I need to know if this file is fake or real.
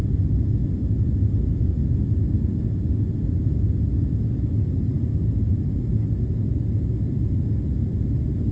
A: real